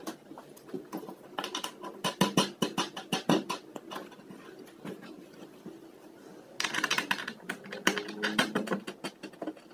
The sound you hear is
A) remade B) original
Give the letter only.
B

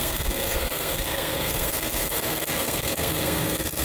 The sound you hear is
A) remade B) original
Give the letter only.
A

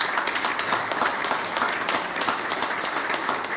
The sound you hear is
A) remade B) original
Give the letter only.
B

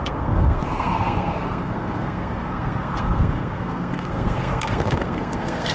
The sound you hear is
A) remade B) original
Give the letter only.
A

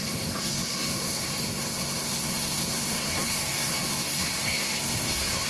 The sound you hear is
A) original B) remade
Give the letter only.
B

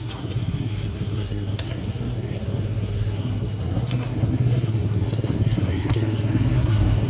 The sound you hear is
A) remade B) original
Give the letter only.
A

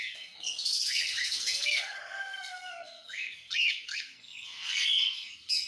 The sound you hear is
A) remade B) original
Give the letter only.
A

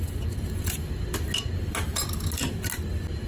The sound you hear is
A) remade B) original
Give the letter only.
B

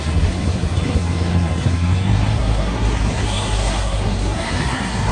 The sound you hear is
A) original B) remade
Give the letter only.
B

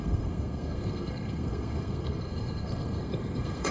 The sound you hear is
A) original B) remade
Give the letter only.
B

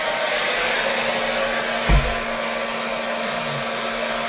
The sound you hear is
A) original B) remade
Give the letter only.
A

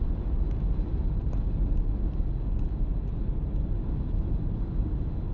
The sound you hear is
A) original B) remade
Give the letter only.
A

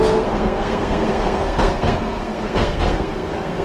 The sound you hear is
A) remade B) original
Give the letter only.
A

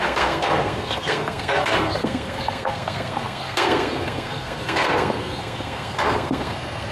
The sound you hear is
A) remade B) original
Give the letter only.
A